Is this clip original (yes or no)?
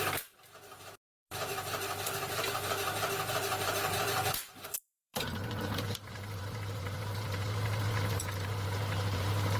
no